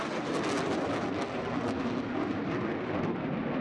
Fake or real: real